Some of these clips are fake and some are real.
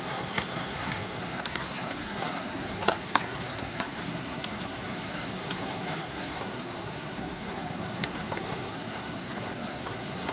fake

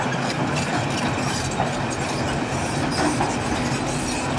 real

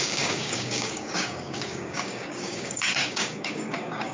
fake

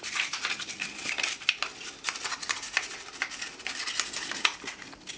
real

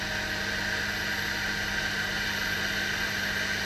real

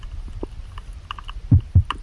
real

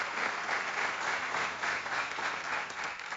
real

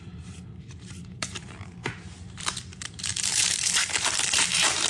fake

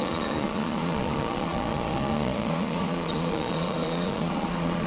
fake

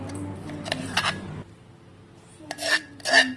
real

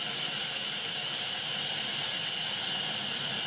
real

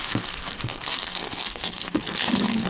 fake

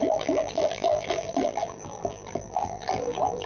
fake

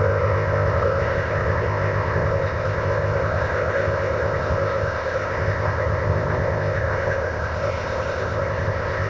fake